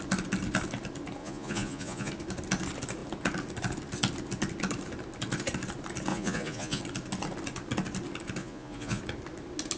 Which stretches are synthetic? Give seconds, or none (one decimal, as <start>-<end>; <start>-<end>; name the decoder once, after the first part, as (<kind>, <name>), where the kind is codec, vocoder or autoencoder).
1.2-2.1 (vocoder, Vocos); 6.1-6.8; 8.4-9.0